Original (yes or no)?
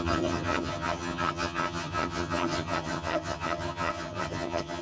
no